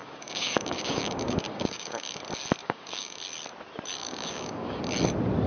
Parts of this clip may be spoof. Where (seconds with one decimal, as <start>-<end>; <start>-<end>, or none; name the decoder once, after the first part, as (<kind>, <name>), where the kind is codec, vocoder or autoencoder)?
0.0-2.2 (codec, DAC); 2.6-3.2; 4.0-4.8